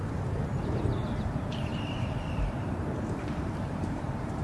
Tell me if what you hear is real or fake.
fake